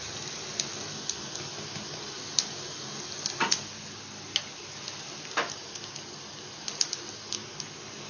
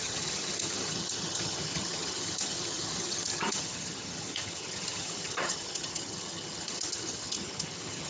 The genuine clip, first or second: first